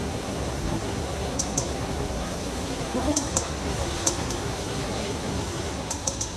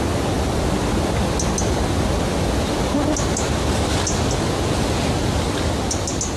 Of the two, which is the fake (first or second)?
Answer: first